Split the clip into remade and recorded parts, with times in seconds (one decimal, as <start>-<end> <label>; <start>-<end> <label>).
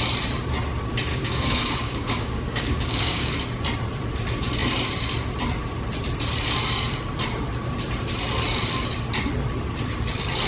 0.0-1.1 recorded; 1.1-3.3 remade; 3.3-10.5 recorded